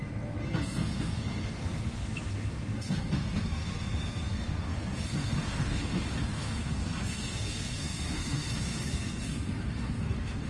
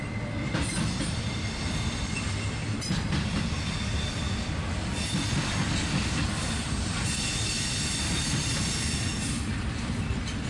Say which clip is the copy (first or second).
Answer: first